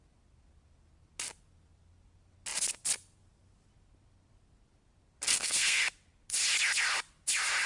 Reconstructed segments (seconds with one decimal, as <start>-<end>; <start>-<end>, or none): 5.3-5.9